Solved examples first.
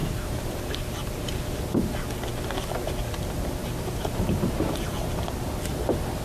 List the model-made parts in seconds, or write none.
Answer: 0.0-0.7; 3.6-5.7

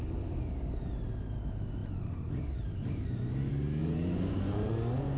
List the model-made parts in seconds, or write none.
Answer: 3.8-4.7

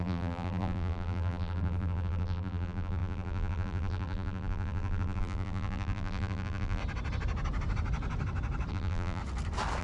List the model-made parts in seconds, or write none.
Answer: 0.0-6.8; 8.7-9.2

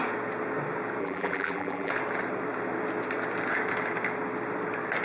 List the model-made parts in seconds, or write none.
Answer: 1.0-1.9

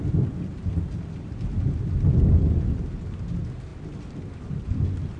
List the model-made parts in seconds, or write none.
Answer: none